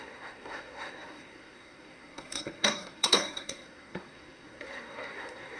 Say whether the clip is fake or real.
fake